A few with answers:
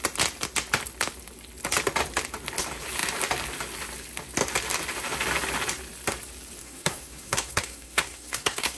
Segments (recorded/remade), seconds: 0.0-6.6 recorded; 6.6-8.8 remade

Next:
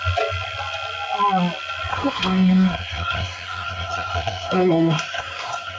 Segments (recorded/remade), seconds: 0.0-1.9 recorded; 1.9-5.8 remade

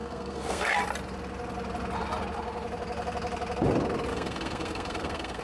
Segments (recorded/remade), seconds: 0.0-0.7 remade; 0.7-4.1 recorded; 4.1-5.4 remade